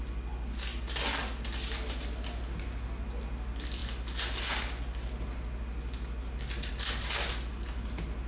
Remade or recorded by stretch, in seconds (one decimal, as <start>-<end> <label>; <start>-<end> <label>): 0.0-8.3 recorded